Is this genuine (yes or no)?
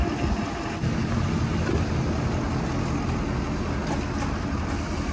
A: yes